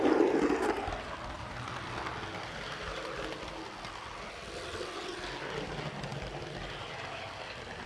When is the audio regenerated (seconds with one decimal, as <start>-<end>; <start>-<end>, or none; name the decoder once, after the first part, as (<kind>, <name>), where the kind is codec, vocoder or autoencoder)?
none